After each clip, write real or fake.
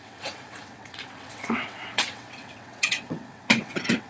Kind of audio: fake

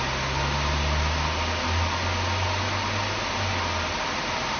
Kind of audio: real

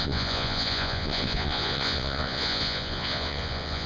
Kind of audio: fake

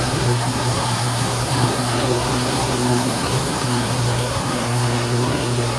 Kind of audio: fake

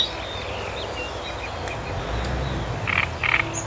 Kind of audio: real